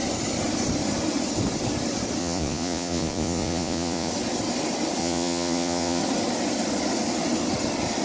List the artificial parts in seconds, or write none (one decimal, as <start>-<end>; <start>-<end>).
2.2-4.1; 5.0-6.0